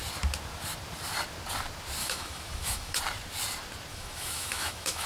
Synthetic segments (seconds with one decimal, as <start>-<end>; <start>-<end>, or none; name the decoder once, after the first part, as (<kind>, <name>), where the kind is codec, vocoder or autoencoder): 2.0-3.0 (autoencoder, DAC-VAE); 3.9-5.1

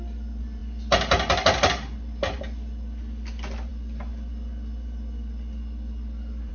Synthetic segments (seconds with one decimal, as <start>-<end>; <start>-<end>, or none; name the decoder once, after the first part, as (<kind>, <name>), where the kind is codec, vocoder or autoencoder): none